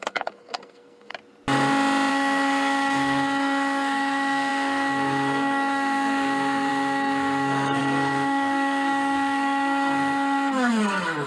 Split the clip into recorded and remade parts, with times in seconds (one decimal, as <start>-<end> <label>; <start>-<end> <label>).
0.0-1.1 remade; 1.1-2.1 recorded; 2.1-11.3 remade